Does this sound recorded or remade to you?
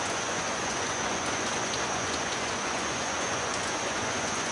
remade